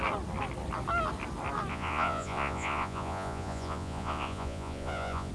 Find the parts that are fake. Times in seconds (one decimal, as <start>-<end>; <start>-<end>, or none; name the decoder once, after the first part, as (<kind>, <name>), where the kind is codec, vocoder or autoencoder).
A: 1.7-5.3 (vocoder, Vocos)